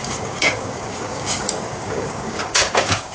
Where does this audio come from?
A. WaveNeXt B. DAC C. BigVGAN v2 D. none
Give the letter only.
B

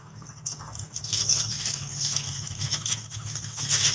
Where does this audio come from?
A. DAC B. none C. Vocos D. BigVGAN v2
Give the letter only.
A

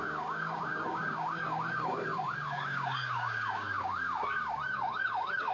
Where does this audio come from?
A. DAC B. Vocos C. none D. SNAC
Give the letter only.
A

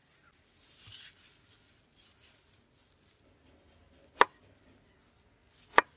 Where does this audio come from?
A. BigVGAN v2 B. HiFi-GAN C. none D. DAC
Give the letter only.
C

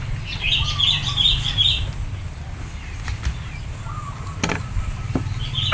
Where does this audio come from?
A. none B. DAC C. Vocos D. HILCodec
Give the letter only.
A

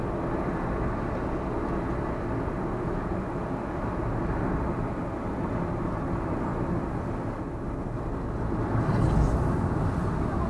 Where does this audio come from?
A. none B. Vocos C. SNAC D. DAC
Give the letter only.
A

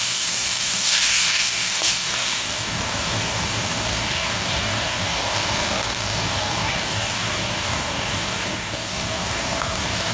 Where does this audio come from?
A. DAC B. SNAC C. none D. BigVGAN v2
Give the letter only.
A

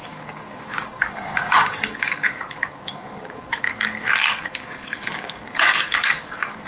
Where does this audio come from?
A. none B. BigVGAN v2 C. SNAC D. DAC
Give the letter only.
D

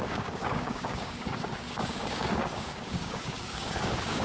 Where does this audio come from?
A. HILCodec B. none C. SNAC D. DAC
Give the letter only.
D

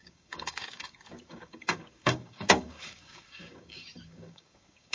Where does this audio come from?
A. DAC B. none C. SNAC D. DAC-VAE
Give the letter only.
A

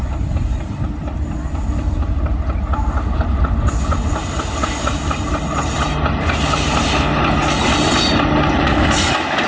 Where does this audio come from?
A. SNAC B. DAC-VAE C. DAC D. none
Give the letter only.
D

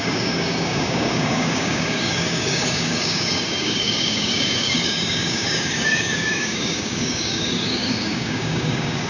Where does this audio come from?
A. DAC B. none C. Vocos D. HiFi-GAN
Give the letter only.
A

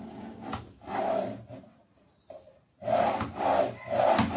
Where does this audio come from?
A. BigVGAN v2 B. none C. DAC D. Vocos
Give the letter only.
B